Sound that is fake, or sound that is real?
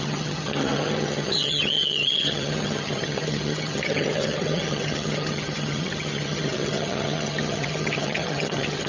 fake